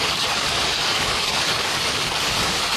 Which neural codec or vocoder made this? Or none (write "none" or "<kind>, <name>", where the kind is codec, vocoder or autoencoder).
codec, DAC